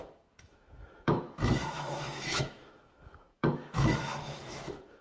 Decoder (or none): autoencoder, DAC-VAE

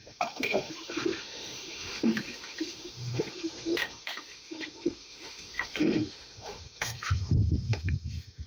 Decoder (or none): autoencoder, DAC-VAE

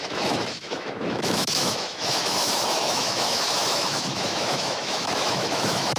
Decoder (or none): autoencoder, DAC-VAE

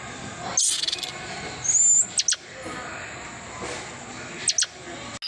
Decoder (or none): none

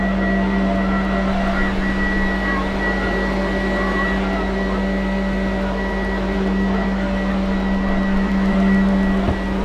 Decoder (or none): none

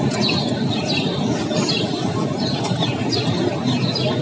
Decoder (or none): none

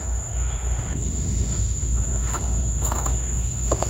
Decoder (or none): autoencoder, DAC-VAE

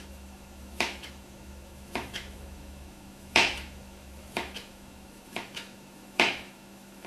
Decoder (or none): autoencoder, DAC-VAE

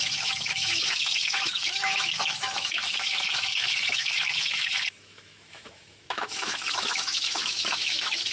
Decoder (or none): autoencoder, DAC-VAE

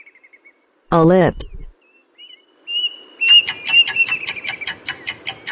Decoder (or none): none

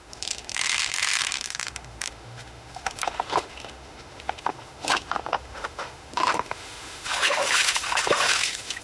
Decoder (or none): autoencoder, DAC-VAE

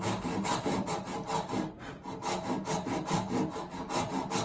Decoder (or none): none